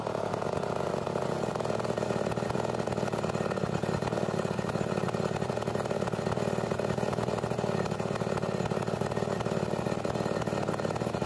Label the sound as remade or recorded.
recorded